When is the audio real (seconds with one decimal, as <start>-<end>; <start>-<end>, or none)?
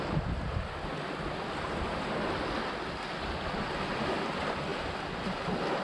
0.0-5.8